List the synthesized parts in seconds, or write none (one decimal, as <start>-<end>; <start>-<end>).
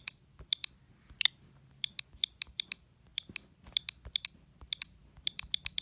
none